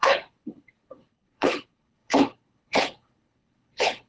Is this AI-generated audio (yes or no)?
yes